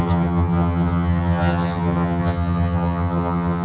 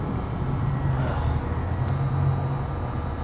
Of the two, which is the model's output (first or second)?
first